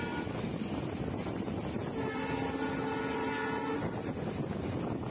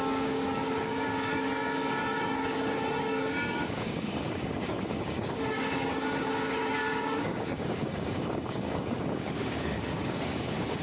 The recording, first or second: first